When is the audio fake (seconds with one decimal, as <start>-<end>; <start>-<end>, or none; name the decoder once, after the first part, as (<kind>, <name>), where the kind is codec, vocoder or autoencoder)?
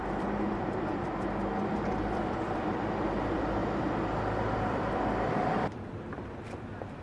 0.0-0.9 (vocoder, BigVGAN v2); 1.6-7.0